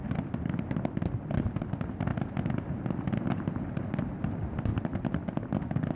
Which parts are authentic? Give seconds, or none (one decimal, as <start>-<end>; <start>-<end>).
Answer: 0.0-6.0